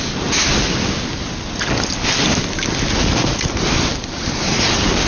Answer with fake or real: real